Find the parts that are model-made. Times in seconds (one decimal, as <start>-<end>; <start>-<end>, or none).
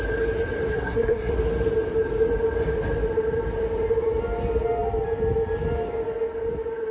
0.7-1.3